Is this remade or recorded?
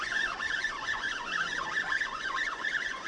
remade